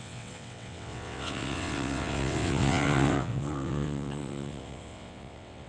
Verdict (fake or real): fake